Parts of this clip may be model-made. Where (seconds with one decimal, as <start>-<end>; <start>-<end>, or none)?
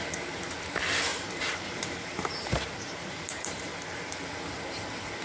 1.1-4.2